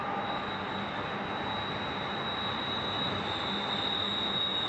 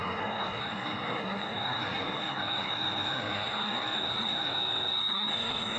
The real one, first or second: first